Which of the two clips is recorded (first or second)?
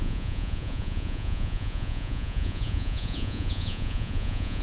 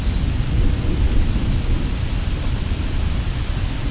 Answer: second